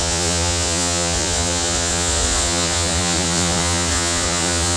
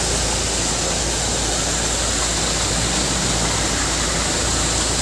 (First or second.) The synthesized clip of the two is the first